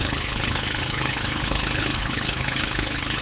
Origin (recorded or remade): remade